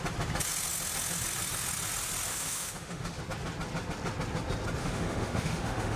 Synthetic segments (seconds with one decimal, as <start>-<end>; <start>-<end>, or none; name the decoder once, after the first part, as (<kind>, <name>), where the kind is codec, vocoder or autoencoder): 2.3-3.2 (autoencoder, DAC-VAE); 4.8-6.0